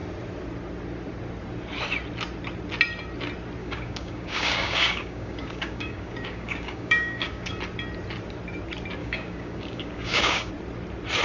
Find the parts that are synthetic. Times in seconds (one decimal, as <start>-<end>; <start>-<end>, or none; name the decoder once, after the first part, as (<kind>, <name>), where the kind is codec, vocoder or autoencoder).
3.6-7.5 (codec, DAC); 9.0-10.5